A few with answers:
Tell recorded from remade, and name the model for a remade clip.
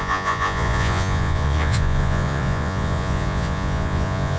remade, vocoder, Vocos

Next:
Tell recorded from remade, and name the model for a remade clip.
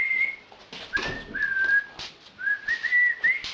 recorded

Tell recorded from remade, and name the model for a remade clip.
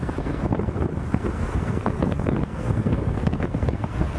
remade, codec, SNAC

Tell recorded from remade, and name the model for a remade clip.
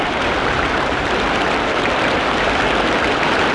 recorded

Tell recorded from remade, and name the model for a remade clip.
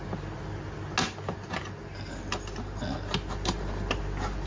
recorded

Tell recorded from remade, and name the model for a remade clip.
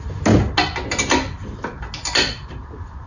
recorded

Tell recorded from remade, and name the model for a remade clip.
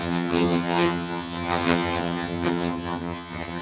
remade, vocoder, HiFi-GAN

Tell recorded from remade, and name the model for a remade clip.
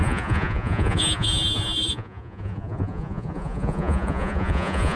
remade, vocoder, Vocos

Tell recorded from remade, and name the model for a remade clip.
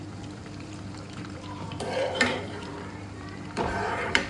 remade, vocoder, BigVGAN v2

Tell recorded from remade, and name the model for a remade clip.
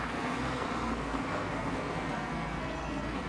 remade, codec, SNAC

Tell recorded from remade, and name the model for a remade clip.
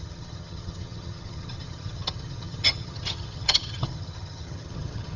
remade, vocoder, HiFi-GAN